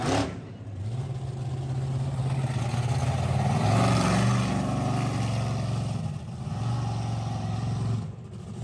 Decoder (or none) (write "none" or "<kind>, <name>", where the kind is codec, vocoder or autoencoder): none